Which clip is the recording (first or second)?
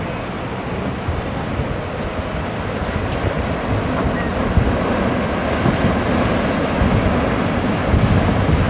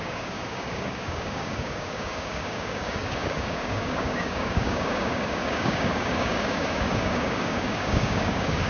first